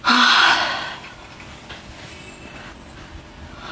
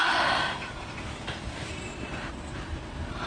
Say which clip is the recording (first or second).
first